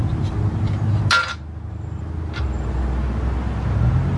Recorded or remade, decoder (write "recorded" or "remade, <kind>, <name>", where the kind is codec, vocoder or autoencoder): recorded